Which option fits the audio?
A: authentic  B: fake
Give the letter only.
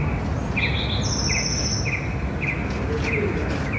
A